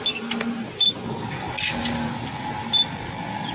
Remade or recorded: recorded